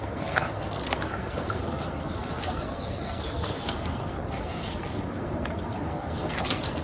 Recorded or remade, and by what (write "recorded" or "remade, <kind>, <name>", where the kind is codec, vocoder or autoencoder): remade, codec, SNAC